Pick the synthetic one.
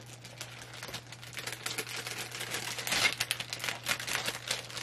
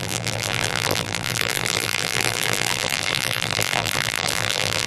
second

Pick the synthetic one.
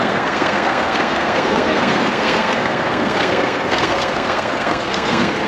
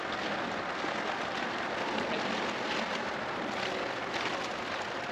first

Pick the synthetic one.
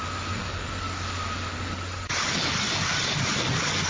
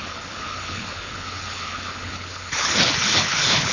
second